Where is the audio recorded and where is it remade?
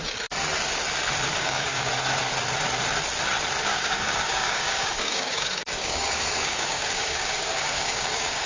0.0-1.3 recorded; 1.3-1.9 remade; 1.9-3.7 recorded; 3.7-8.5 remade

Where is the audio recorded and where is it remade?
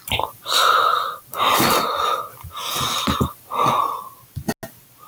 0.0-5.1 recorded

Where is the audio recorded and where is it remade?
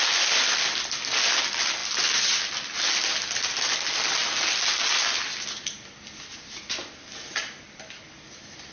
0.0-8.7 recorded